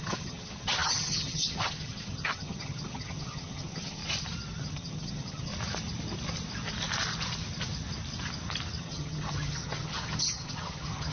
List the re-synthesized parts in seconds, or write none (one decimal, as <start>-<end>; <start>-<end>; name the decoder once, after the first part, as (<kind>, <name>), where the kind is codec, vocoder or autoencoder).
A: 0.0-4.0 (vocoder, HiFi-GAN); 4.6-5.5; 8.8-11.1

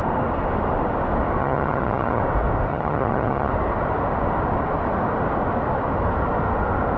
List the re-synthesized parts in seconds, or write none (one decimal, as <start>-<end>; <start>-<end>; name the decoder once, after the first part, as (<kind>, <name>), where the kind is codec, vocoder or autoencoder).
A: 1.4-2.2 (vocoder, HiFi-GAN); 2.7-3.5

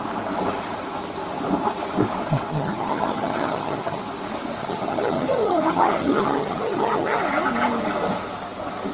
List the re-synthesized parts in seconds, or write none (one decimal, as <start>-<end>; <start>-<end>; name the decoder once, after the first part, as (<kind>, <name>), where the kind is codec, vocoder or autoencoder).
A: 2.5-4.0 (vocoder, HiFi-GAN); 4.6-7.2

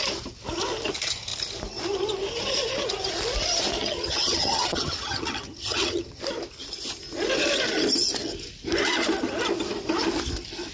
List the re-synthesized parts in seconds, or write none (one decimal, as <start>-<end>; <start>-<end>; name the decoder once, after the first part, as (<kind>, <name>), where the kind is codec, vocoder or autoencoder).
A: 3.8-6.2 (vocoder, HiFi-GAN)

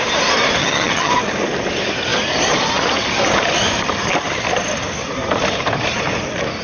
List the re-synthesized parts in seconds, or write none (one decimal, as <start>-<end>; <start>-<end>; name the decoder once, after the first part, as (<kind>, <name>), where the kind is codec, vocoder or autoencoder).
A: 0.6-1.1 (vocoder, HiFi-GAN)

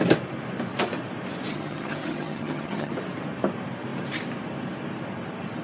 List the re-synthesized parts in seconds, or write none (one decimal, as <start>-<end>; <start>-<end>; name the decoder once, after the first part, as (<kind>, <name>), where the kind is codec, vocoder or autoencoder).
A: 1.5-2.9 (vocoder, HiFi-GAN)

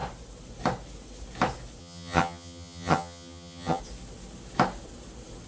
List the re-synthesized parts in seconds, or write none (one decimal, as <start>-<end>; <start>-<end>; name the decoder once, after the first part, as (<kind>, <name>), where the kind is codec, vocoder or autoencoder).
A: 1.8-3.8 (vocoder, HiFi-GAN)